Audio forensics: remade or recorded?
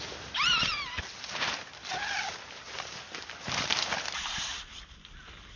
recorded